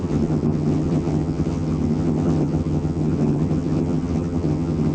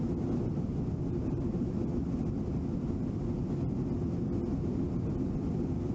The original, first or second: second